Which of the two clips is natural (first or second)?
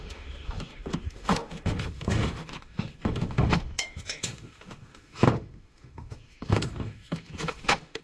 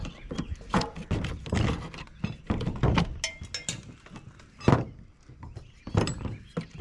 second